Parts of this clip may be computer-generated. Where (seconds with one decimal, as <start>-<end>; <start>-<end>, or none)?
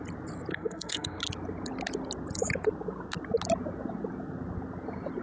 0.5-1.2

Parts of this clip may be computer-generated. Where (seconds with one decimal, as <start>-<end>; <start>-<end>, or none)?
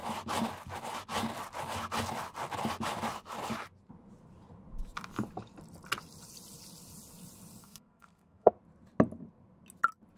7.6-8.5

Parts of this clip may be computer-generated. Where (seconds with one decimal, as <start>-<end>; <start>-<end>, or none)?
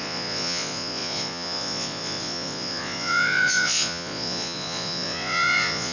0.0-5.9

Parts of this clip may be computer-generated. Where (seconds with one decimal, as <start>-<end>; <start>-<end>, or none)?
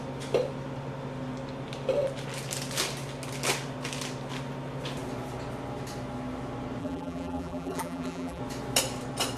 6.8-8.4